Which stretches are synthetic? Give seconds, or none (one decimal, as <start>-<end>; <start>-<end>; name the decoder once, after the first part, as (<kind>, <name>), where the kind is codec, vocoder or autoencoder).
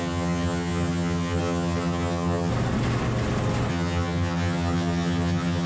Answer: 0.0-2.5 (vocoder, HiFi-GAN); 3.7-5.7